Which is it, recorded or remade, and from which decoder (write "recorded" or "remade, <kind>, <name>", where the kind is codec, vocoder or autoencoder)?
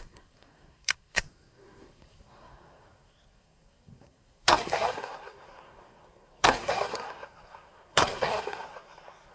remade, codec, SNAC